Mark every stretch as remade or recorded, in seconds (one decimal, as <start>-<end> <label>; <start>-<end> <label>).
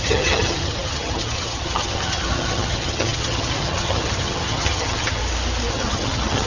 0.0-5.2 remade; 5.2-5.7 recorded; 5.7-6.5 remade